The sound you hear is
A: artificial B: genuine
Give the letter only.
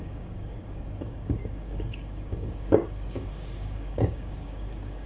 A